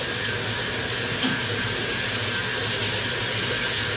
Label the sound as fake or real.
real